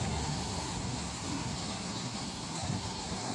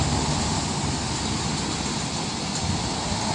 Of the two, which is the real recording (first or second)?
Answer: second